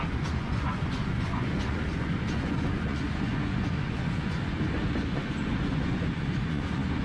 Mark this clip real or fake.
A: fake